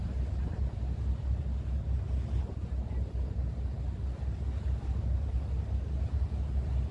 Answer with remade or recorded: recorded